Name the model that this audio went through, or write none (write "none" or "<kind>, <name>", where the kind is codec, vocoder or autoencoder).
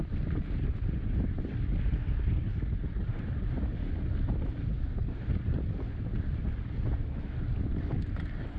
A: none